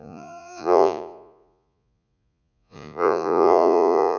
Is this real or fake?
fake